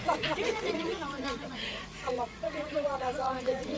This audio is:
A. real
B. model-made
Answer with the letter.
B